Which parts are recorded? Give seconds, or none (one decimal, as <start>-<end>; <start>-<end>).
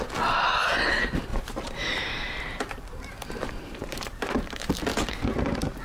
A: 0.0-1.3; 4.8-5.8